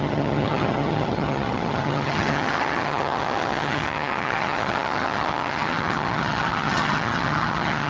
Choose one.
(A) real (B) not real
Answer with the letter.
B